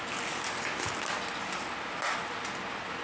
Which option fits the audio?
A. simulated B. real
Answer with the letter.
B